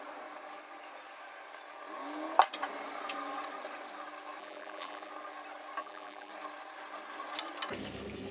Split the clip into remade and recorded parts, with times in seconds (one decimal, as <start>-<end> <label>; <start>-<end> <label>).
0.0-4.4 recorded; 4.4-5.1 remade; 5.1-5.8 recorded; 5.8-6.3 remade; 6.3-8.3 recorded